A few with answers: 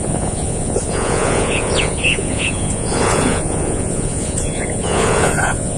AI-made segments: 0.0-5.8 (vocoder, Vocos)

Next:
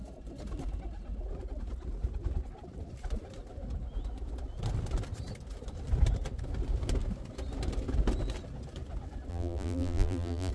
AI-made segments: 9.3-10.5 (vocoder, BigVGAN v2)

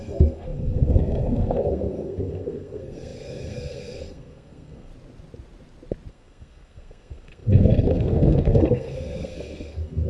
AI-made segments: 0.0-4.9 (codec, SNAC); 6.1-10.1

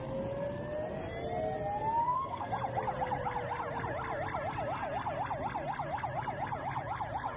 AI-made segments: 2.0-2.5 (codec, SNAC)

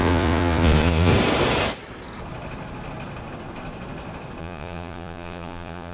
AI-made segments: 0.0-1.1 (vocoder, Vocos); 4.4-5.9